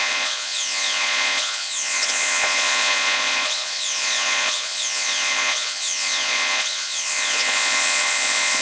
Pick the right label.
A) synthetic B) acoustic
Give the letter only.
A